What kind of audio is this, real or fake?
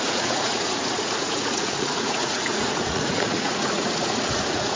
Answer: fake